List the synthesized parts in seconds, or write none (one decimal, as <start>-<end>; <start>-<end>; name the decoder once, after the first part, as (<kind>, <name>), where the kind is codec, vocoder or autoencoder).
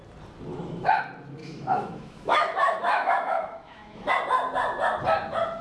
0.5-1.0 (autoencoder, DAC-VAE); 1.4-4.1